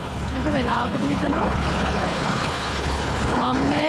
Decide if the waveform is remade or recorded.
remade